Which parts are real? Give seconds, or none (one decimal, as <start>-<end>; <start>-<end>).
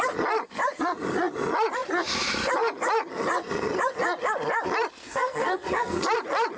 0.0-5.0; 6.0-6.6